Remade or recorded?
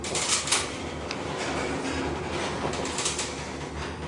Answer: recorded